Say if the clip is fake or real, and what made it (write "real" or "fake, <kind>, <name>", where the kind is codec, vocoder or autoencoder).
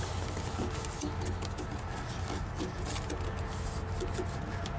real